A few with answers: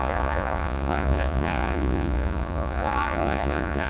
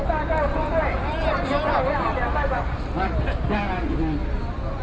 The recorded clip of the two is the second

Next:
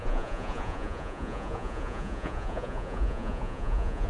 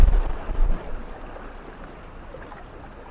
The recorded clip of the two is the second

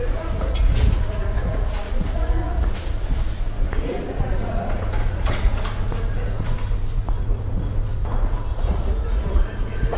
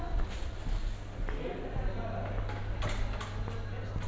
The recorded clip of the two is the second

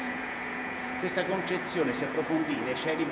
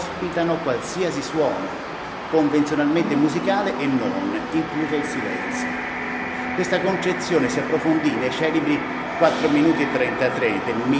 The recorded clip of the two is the second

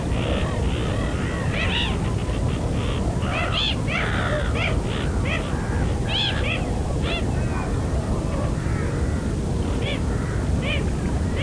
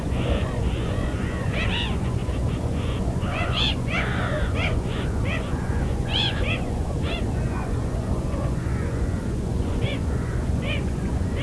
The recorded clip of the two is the first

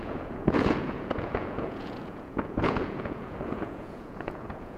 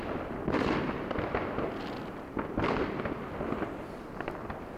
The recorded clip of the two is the second